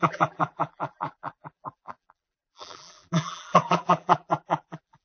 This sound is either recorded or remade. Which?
remade